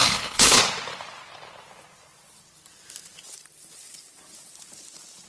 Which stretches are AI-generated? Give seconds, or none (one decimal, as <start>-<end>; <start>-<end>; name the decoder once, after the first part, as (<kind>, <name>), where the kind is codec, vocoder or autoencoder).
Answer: 0.0-0.6 (codec, HILCodec)